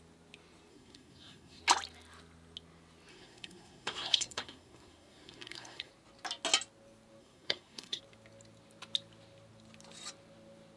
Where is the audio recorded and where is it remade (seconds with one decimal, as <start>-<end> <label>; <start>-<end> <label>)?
0.0-0.7 recorded; 0.7-1.6 remade; 1.6-3.1 recorded; 3.1-5.9 remade; 5.9-7.2 recorded; 7.2-8.0 remade; 8.0-10.8 recorded